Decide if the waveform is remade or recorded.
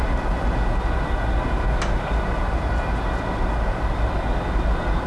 recorded